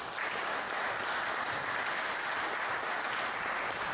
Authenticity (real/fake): real